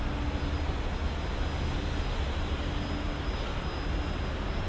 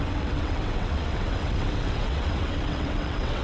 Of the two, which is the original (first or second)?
first